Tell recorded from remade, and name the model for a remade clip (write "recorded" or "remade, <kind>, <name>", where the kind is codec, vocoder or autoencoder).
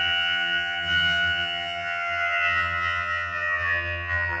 remade, vocoder, HiFi-GAN